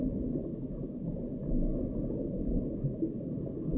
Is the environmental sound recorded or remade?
recorded